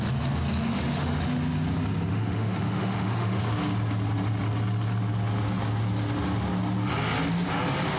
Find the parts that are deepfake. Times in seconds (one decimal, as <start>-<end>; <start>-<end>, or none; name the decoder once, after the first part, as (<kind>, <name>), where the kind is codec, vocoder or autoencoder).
0.7-1.2 (autoencoder, DAC-VAE); 2.1-3.4